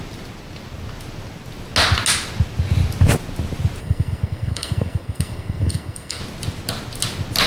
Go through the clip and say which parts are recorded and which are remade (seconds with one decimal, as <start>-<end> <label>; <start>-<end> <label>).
0.0-3.8 recorded; 3.8-6.2 remade; 6.2-7.5 recorded